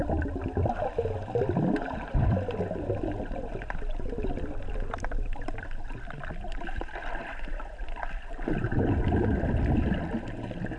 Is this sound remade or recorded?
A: recorded